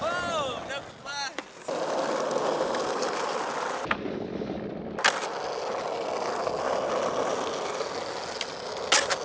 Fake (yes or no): no